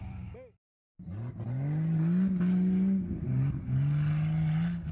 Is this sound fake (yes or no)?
no